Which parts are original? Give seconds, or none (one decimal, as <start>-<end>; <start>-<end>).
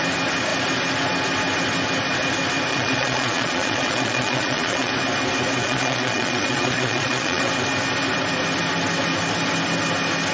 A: 0.0-2.7; 4.9-5.6; 7.5-10.3